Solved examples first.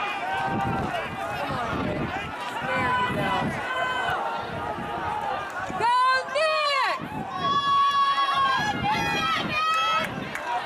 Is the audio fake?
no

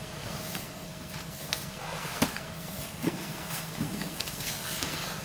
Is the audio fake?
yes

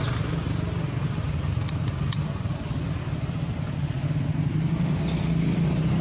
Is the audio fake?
no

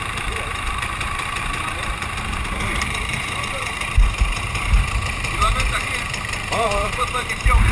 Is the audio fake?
yes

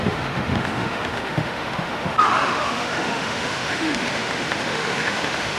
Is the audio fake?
yes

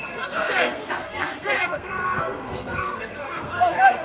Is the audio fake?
yes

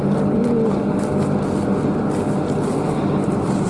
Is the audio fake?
no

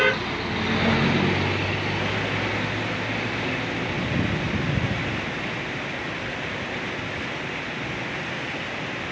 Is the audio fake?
no